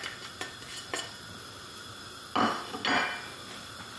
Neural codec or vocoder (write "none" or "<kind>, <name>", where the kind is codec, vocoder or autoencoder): none